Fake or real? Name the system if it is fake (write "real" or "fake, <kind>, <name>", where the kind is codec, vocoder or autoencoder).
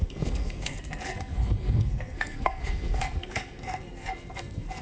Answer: fake, codec, SNAC